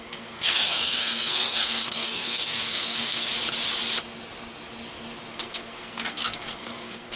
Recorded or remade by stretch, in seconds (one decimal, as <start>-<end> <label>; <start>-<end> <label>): 0.0-3.3 remade; 3.3-5.3 recorded; 5.3-7.2 remade